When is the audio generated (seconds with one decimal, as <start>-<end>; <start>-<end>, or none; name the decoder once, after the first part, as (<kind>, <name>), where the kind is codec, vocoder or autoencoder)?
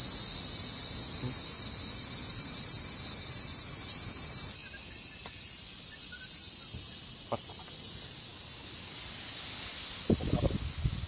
none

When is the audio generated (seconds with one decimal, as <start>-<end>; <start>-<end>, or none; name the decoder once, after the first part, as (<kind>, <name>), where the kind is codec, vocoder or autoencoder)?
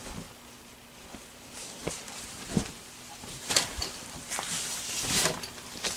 1.8-4.3 (vocoder, BigVGAN v2)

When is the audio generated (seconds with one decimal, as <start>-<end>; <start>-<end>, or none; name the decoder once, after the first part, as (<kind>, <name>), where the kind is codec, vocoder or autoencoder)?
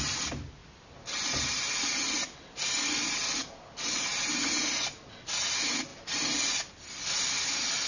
none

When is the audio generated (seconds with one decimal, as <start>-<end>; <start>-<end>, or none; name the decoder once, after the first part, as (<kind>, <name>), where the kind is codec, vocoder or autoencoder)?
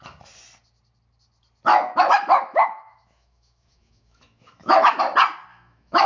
1.7-5.0 (autoencoder, DAC-VAE); 5.5-6.1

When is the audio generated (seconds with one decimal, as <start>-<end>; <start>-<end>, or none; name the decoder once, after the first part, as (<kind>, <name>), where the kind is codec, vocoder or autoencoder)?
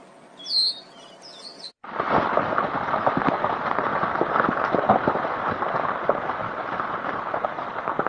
none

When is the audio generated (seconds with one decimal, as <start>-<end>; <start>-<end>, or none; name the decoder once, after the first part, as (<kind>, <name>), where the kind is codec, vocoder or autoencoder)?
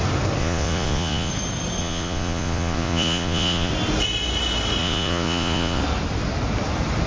0.4-1.3 (vocoder, Vocos); 1.8-3.7; 4.8-5.8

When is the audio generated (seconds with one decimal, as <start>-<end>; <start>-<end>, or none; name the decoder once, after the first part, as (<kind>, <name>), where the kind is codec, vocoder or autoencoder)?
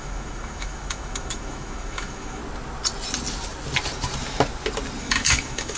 0.0-2.4 (autoencoder, DAC-VAE); 5.0-5.8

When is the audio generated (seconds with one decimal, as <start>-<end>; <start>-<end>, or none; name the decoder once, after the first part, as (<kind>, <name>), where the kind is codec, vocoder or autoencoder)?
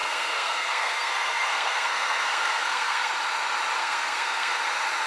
0.0-3.1 (codec, SNAC); 3.8-4.6